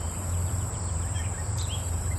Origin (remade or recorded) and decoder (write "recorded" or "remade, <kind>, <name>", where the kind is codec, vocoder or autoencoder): remade, vocoder, BigVGAN v2